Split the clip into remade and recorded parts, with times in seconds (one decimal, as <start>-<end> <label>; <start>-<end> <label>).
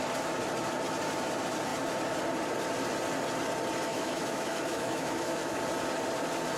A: 0.0-3.9 recorded; 3.9-5.6 remade; 5.6-6.6 recorded